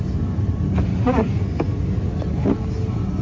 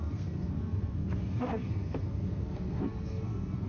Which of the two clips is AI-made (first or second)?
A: second